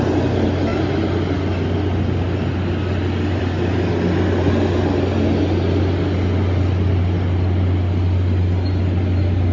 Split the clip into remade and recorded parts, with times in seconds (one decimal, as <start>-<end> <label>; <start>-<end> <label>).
0.0-9.5 recorded